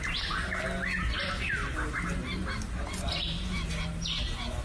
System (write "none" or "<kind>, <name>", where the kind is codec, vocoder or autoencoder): none